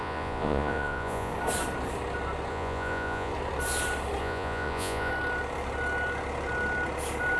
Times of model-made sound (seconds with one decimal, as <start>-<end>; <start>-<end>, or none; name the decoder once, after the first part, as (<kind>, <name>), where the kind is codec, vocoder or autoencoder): 0.0-1.3 (vocoder, Vocos); 2.5-3.3; 4.2-5.1